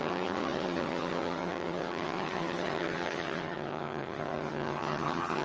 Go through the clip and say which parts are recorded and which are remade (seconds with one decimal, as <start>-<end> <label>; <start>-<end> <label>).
0.0-5.4 remade